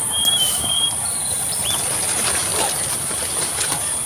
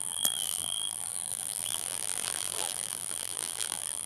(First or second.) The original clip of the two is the first